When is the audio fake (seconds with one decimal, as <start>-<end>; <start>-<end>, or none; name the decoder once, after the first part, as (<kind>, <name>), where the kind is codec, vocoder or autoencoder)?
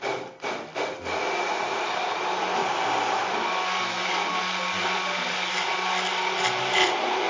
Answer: none